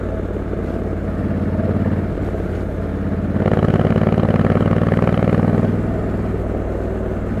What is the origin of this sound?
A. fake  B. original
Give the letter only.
B